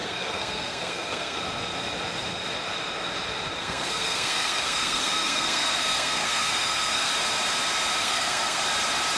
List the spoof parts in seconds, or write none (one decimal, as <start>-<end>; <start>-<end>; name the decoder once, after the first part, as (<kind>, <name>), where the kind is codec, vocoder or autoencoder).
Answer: 0.0-1.4 (codec, SNAC); 3.6-7.1; 8.0-8.6